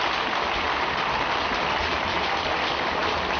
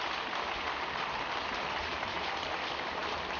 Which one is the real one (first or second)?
first